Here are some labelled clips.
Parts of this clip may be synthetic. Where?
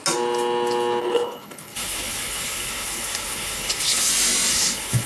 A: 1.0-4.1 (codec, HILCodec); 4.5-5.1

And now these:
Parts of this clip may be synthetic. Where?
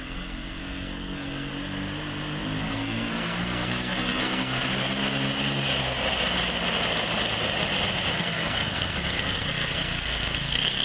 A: 0.0-1.5 (codec, SNAC); 2.6-4.7; 8.1-10.8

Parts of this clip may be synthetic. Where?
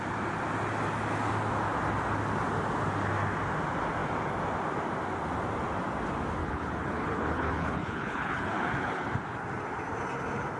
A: 6.4-9.1 (codec, HILCodec)